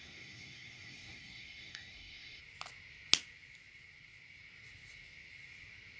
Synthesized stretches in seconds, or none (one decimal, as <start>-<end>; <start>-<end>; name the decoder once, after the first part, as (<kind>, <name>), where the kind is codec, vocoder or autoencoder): 0.0-2.4 (codec, SNAC)

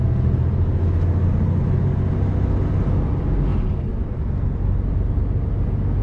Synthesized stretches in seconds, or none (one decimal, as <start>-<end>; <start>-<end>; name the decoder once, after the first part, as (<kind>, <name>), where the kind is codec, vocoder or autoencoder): none

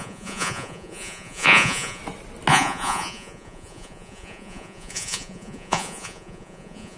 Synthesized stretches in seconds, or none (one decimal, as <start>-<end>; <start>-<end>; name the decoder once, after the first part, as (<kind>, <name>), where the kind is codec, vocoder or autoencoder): 0.0-2.0 (vocoder, Vocos); 2.5-7.0

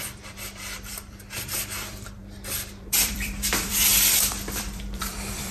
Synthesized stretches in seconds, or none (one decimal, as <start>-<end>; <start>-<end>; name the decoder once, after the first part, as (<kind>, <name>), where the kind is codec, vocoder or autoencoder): 0.0-2.2 (vocoder, BigVGAN v2); 2.8-5.5

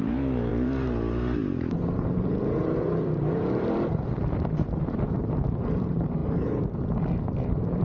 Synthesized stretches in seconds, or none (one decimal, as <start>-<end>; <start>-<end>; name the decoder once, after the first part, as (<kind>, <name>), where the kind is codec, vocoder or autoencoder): 0.0-7.8 (vocoder, BigVGAN v2)

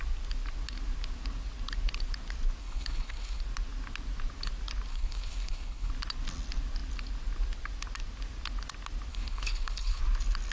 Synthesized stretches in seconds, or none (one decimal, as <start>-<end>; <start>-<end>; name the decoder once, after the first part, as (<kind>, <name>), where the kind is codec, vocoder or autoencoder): 2.6-3.4 (codec, HILCodec); 4.9-5.9; 9.1-10.0

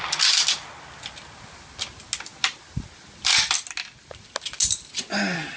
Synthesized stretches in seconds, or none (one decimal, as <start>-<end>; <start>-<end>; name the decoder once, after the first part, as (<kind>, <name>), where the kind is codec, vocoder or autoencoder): none